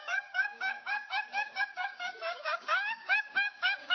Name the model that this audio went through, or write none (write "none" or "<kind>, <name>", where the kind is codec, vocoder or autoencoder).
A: codec, DAC